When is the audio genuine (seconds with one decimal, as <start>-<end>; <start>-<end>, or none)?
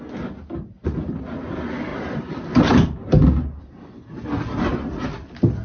0.0-1.9; 3.6-5.6